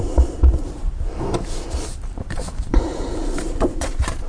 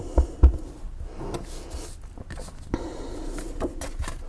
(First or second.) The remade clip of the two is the first